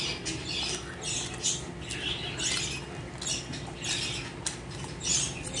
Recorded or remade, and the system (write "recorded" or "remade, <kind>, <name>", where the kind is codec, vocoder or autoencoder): recorded